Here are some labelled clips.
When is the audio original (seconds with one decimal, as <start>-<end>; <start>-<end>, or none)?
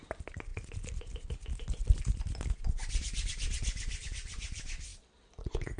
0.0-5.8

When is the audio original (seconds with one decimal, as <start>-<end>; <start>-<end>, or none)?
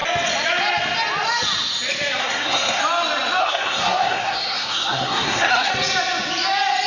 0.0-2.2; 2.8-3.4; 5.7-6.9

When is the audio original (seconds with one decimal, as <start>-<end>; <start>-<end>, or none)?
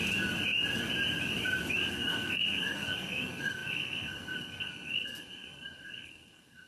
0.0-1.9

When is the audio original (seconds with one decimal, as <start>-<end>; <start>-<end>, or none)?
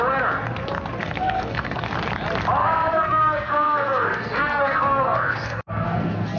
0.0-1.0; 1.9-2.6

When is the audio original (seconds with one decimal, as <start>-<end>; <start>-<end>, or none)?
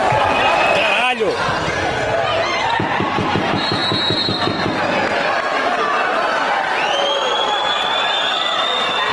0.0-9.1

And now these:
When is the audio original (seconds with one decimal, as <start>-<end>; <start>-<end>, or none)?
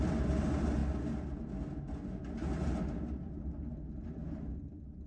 0.0-5.1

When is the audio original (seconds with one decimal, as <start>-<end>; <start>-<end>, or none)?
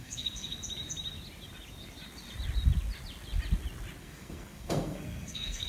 0.6-4.0